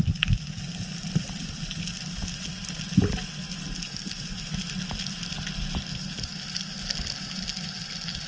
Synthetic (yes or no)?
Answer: no